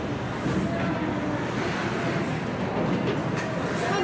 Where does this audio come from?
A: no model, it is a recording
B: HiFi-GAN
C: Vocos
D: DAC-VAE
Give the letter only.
A